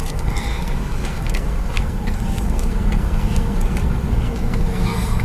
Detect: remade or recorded remade